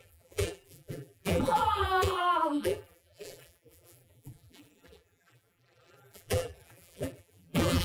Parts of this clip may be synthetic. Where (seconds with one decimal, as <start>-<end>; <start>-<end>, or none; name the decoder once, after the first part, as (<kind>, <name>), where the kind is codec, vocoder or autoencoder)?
0.0-7.8 (vocoder, BigVGAN v2)